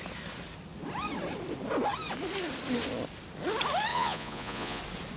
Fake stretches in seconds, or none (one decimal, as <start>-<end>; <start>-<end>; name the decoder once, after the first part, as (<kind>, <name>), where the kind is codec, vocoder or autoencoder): 3.9-4.8 (vocoder, Vocos)